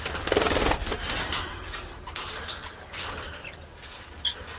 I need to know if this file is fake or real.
real